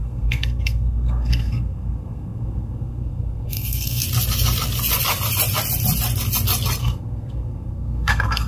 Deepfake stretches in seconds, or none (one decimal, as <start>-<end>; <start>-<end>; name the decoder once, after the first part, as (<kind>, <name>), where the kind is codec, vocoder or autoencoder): 0.0-4.0 (codec, SNAC); 6.8-8.5

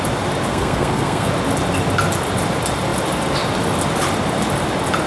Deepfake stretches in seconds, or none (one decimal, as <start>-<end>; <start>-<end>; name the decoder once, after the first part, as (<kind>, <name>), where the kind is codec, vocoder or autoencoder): 0.5-1.3 (codec, SNAC)